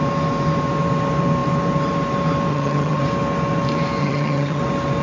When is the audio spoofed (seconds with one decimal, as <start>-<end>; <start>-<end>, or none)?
2.5-3.0; 4.0-4.6